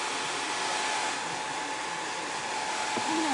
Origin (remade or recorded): recorded